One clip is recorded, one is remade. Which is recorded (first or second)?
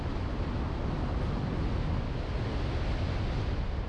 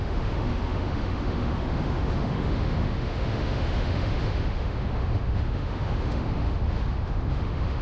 first